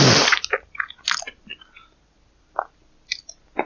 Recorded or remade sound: recorded